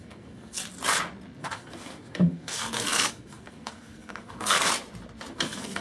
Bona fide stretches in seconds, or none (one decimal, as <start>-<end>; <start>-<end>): 0.6-1.4; 4.7-5.3